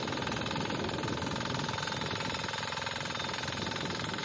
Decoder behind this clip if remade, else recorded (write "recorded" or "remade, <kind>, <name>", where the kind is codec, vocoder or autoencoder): recorded